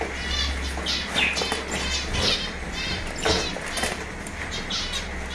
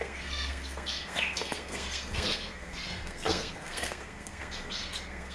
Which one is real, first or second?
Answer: first